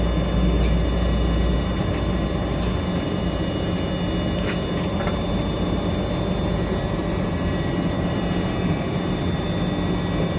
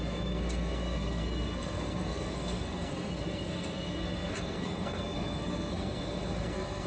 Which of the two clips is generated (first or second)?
second